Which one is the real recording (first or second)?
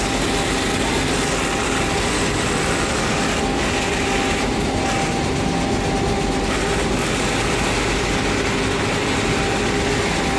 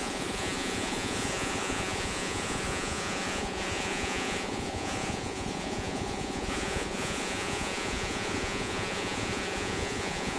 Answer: first